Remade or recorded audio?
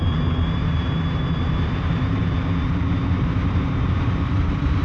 remade